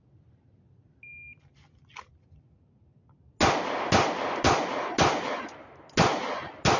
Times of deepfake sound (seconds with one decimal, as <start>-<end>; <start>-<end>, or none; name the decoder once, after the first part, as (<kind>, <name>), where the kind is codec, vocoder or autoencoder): none